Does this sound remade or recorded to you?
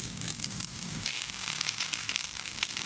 remade